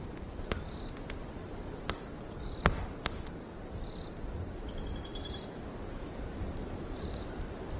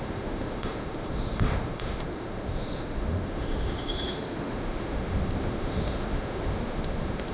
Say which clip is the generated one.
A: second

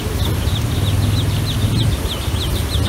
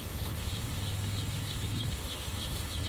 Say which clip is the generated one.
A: second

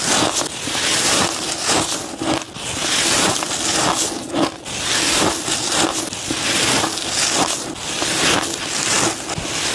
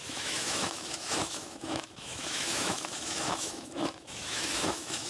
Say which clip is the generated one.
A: second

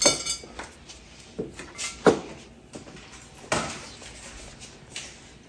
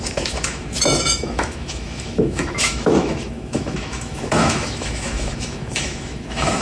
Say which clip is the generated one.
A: second